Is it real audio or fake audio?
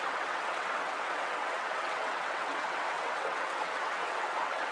fake